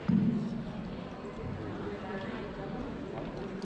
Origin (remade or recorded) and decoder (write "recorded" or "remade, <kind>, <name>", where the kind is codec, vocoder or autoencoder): recorded